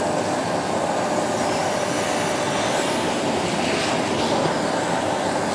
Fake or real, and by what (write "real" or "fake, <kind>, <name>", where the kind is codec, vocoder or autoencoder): real